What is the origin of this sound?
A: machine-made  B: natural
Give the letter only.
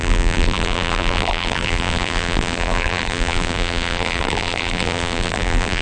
A